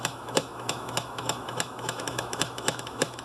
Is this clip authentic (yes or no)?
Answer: no